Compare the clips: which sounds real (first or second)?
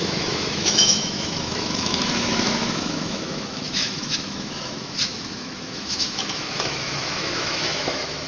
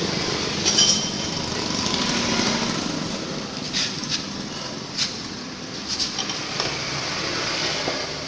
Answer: second